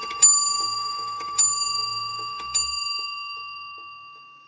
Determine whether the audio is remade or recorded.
remade